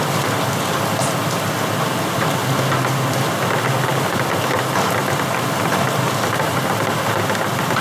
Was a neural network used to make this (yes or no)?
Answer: no